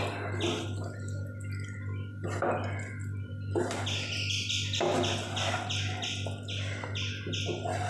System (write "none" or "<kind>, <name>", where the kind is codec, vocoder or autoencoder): none